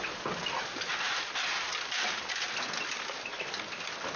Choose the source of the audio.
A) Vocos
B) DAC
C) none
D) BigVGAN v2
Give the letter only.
C